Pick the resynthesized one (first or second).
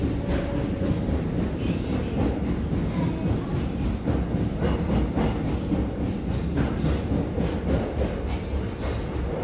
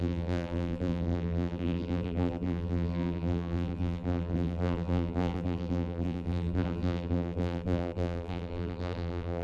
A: second